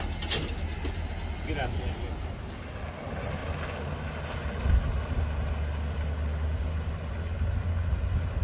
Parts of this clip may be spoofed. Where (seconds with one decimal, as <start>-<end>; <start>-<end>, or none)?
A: none